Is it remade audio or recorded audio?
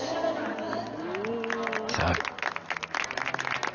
recorded